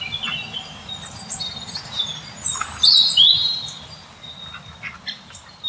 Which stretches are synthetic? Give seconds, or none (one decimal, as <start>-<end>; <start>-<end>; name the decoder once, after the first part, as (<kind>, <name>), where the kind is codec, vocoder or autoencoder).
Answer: none